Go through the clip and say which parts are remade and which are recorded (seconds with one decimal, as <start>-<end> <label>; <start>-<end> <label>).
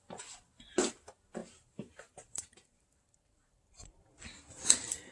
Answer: 0.0-1.4 recorded; 1.4-4.5 remade; 4.5-5.1 recorded